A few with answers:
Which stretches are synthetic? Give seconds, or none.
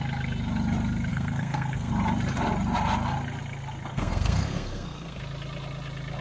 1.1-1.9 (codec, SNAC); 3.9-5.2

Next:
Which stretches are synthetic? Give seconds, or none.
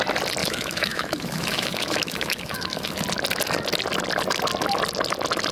0.4-3.0 (autoencoder, DAC-VAE)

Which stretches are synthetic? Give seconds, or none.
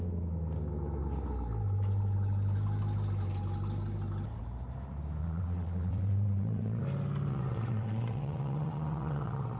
5.2-6.8 (vocoder, WaveNeXt); 7.3-9.6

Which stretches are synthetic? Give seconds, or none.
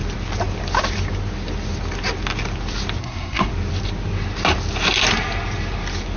3.0-3.5 (codec, SNAC)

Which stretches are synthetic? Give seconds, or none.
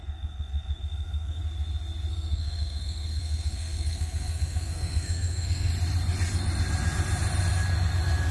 0.0-1.4 (codec, SNAC); 2.1-5.7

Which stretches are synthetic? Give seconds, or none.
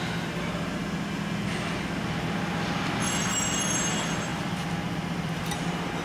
4.3-5.4 (vocoder, BigVGAN v2)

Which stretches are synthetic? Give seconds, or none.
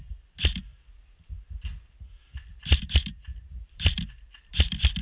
0.0-0.7 (vocoder, BigVGAN v2); 2.6-5.0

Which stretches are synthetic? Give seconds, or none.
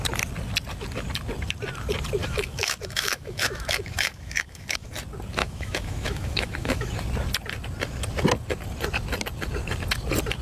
2.2-4.9 (autoencoder, DAC-VAE); 5.4-6.9